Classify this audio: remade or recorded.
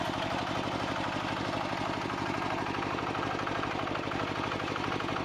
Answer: recorded